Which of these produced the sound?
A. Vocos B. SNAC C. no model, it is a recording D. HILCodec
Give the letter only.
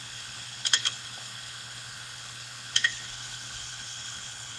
D